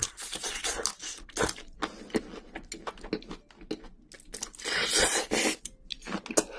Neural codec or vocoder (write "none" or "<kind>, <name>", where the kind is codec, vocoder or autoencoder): none